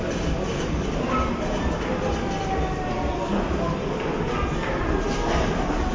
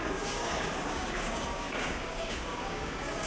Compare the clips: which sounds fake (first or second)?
second